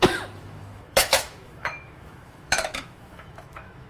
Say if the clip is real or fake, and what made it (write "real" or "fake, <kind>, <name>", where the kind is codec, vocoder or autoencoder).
fake, autoencoder, DAC-VAE